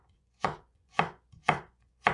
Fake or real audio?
fake